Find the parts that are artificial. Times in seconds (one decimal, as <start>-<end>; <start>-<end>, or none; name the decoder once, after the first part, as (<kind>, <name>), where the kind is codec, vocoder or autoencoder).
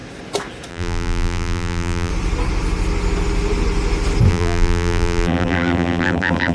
0.7-2.1 (vocoder, BigVGAN v2); 4.3-6.5